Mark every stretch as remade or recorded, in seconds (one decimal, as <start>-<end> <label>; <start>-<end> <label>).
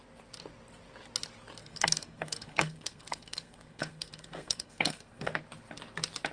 0.0-1.6 recorded; 1.6-5.4 remade; 5.4-6.3 recorded